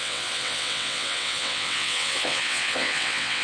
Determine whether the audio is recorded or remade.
remade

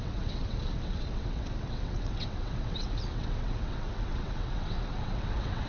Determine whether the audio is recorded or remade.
remade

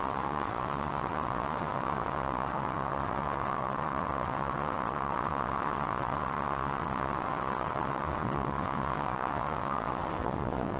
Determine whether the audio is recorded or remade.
remade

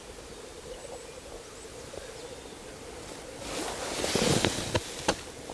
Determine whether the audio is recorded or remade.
recorded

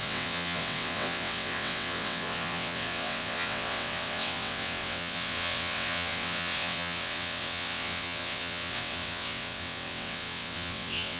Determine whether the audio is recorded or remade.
remade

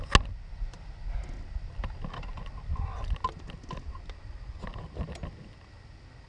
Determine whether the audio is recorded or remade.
recorded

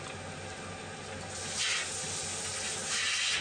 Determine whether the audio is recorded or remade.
recorded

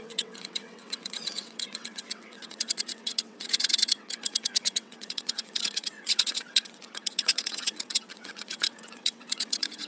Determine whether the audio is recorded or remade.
remade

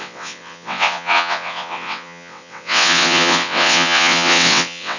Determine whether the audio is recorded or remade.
remade